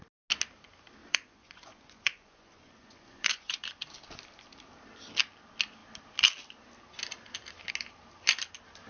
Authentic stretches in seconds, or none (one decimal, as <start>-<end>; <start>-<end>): 0.0-1.0; 3.8-8.9